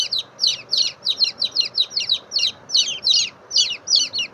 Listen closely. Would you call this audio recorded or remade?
recorded